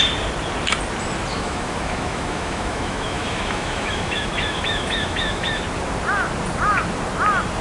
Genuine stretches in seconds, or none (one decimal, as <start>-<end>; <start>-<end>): 0.0-1.3; 5.6-7.6